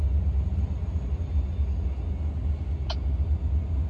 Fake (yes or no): no